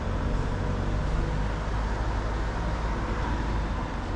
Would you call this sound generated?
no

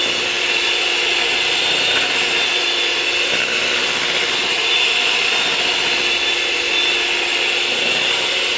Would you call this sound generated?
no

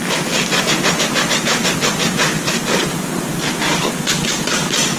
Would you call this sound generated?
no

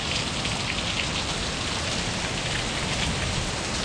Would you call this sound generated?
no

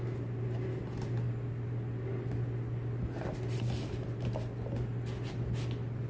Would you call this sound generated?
no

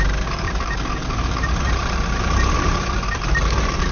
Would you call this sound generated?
yes